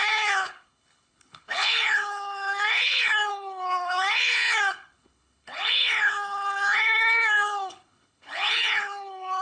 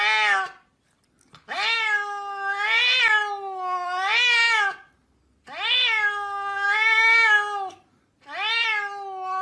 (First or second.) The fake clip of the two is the first